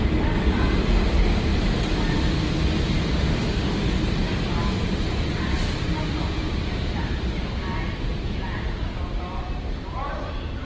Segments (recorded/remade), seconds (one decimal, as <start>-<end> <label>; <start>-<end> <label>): 0.0-3.1 recorded; 3.1-4.0 remade; 4.0-10.6 recorded